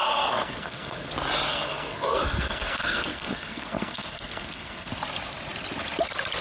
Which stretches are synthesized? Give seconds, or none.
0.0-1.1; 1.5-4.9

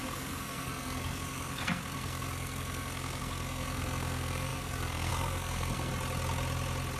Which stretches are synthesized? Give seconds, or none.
0.0-5.9

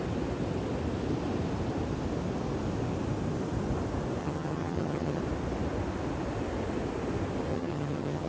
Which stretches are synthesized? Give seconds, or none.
4.2-5.2; 7.5-8.3

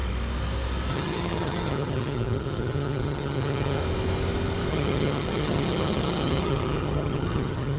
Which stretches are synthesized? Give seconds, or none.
0.9-3.8; 4.7-7.8

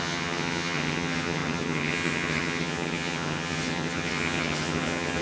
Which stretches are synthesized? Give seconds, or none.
0.0-5.2

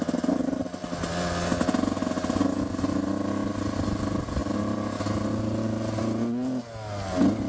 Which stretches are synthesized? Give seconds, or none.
none